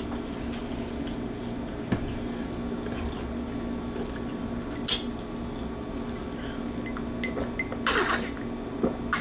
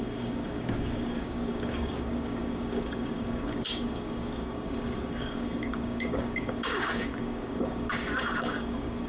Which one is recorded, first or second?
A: first